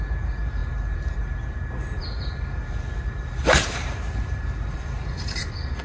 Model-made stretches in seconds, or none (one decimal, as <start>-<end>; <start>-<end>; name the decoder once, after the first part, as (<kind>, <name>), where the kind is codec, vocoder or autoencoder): 0.0-5.8 (vocoder, BigVGAN v2)